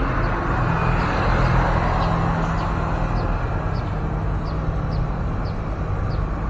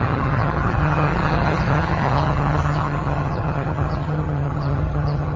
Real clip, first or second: first